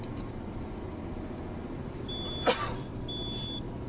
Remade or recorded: recorded